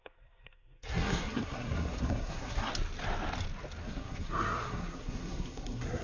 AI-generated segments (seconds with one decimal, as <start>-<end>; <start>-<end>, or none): 0.0-2.7; 3.8-6.0